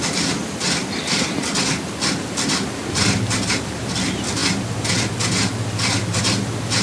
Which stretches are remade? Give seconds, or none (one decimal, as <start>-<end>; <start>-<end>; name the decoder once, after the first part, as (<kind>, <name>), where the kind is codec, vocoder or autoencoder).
none